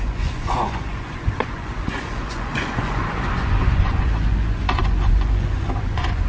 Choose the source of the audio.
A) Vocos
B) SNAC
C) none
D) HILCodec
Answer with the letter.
A